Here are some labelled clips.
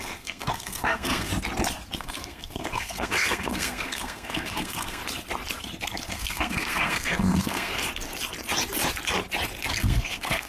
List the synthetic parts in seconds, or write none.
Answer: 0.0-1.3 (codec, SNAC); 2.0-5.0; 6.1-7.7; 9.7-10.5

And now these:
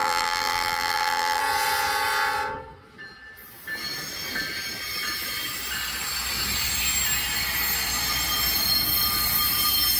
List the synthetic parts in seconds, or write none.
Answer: 0.0-1.4 (vocoder, BigVGAN v2)

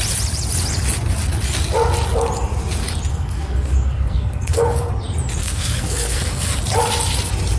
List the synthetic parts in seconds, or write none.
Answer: 3.1-4.9 (codec, SNAC); 5.4-6.6

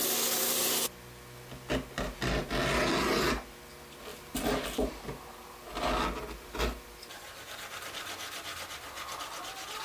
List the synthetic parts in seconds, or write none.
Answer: 4.1-9.2 (vocoder, BigVGAN v2)

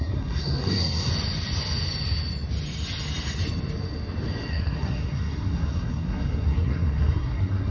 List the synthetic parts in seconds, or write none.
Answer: 0.0-1.1 (codec, SNAC); 4.5-7.7

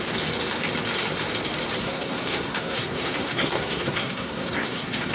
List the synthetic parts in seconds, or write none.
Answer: 1.8-5.1 (codec, SNAC)